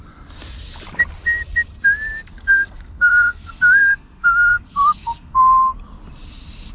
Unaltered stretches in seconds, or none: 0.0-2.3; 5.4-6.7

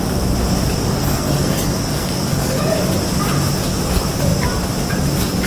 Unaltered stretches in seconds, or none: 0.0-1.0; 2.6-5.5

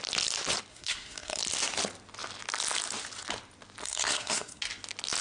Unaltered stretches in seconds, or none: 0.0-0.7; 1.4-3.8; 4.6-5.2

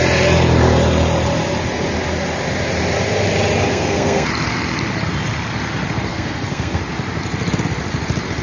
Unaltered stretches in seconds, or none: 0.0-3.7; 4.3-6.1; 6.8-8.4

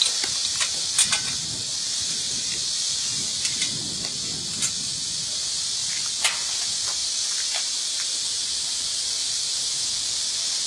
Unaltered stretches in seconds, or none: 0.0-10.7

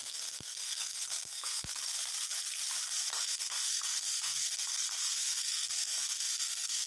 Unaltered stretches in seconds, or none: 1.8-3.2